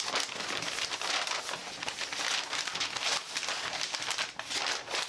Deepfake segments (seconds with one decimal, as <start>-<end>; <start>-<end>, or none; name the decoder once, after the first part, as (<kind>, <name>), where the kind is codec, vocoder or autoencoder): none

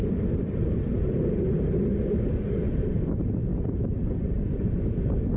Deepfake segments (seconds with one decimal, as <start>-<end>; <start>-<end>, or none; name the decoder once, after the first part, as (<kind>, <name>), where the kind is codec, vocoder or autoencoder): 0.0-2.9 (vocoder, BigVGAN v2); 3.5-4.0

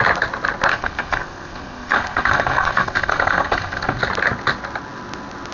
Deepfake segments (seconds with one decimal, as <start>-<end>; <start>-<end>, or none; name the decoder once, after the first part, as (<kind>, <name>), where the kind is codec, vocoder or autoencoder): 0.7-4.0 (codec, SNAC)

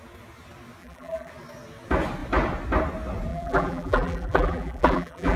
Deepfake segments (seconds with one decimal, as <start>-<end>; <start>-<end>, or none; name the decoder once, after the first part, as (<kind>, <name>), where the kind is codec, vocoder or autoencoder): 0.8-1.3 (vocoder, BigVGAN v2); 3.3-5.4

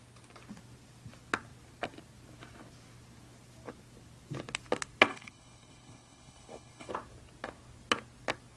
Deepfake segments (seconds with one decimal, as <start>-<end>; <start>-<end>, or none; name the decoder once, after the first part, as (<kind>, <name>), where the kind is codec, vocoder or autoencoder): 5.1-6.9 (codec, HILCodec)

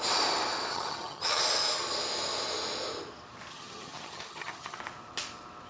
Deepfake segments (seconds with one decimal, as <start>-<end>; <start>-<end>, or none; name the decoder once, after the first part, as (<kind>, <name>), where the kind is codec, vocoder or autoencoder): 0.7-1.4 (vocoder, HiFi-GAN); 3.5-4.8

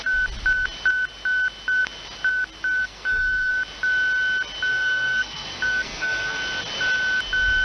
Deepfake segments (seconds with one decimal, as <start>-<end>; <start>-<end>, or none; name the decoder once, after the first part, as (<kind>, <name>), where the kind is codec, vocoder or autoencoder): 2.8-3.5 (codec, SNAC); 4.7-6.4